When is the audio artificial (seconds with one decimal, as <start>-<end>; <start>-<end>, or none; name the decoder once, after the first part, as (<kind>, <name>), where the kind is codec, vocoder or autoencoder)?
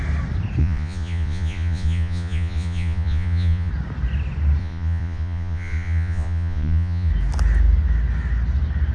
0.6-3.7 (vocoder, Vocos); 4.6-7.1